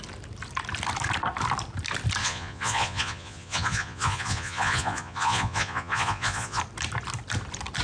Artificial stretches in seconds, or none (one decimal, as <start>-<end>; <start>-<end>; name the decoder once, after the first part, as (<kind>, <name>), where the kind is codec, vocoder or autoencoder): 2.2-6.6 (vocoder, Vocos)